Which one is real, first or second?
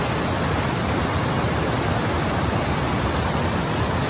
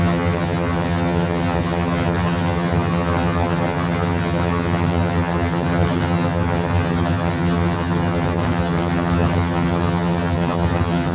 first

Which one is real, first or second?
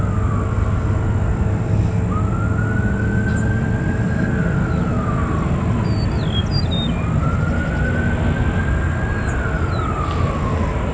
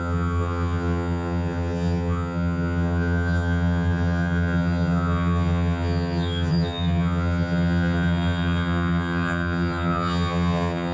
first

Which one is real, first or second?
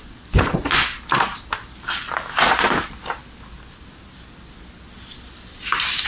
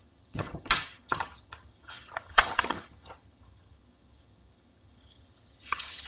first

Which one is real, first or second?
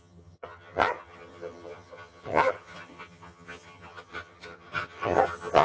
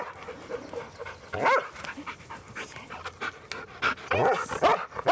second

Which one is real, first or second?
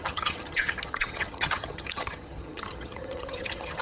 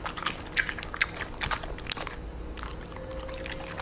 second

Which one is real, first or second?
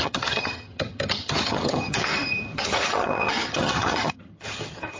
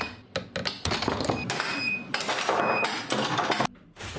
second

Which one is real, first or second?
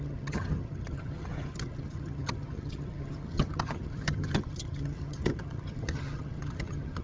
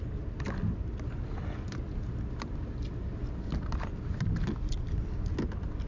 second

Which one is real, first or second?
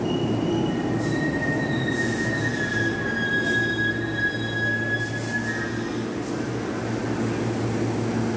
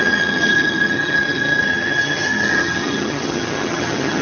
first